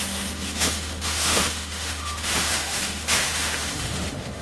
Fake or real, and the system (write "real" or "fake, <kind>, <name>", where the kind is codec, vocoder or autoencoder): fake, autoencoder, DAC-VAE